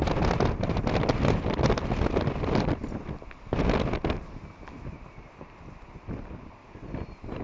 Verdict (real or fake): real